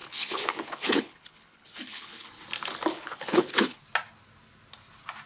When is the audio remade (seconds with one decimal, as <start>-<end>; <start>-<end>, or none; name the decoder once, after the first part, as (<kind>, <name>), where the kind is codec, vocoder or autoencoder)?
0.0-2.3 (codec, HILCodec); 2.9-3.8